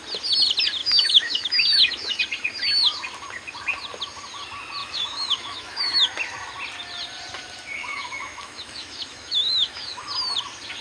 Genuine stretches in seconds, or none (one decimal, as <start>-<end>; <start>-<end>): 0.0-0.8; 2.2-4.8; 6.0-7.8; 10.1-10.8